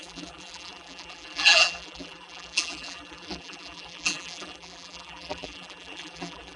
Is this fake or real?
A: fake